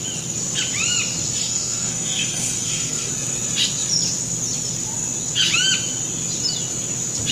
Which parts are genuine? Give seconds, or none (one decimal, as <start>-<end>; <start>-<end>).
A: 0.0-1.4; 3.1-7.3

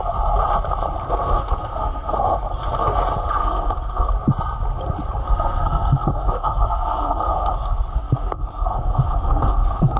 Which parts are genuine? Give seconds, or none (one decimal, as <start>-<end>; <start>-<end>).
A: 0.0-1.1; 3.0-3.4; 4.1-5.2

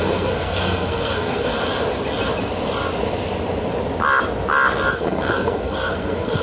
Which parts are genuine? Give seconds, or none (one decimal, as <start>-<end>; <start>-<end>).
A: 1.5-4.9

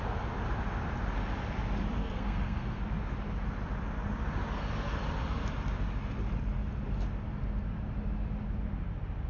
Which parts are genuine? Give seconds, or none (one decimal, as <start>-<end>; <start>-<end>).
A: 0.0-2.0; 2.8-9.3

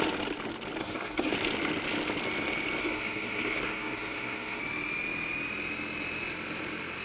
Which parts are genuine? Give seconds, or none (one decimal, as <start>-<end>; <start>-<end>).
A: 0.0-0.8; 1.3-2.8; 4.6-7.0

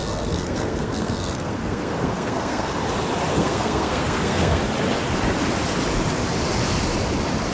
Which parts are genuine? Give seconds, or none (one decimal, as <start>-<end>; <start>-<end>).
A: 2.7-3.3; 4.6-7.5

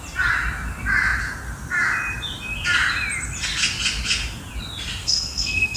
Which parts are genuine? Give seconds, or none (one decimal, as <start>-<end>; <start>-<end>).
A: 0.0-5.0